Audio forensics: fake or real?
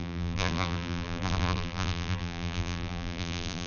fake